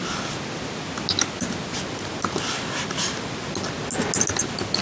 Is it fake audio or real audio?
real